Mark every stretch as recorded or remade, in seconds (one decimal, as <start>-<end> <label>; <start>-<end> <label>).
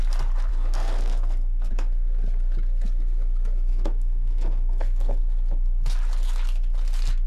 0.0-0.5 recorded; 0.5-1.7 remade; 1.7-3.7 recorded; 3.7-5.2 remade; 5.2-7.3 recorded